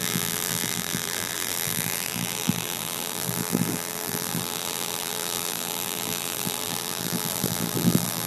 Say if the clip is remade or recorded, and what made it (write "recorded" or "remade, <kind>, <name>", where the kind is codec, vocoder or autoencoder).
remade, vocoder, BigVGAN v2